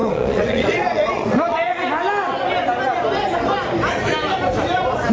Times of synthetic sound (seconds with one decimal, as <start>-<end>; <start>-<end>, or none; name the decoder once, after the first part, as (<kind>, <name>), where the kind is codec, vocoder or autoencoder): 0.0-1.8 (vocoder, Vocos)